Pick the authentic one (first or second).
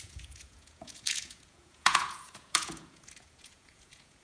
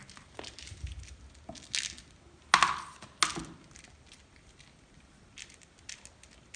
second